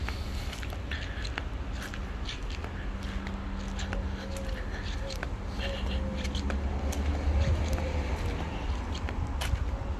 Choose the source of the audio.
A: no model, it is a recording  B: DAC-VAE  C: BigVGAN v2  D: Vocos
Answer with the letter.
A